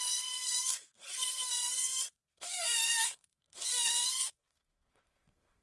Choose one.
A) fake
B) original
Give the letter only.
A